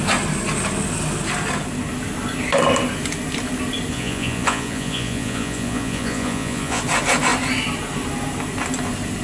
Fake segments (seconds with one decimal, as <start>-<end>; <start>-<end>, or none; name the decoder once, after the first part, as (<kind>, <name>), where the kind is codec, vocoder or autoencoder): 3.9-6.8 (vocoder, Vocos)